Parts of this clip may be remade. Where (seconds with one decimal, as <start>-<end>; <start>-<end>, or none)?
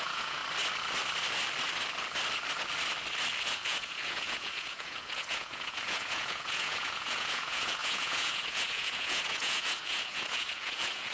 0.0-0.4; 3.4-11.1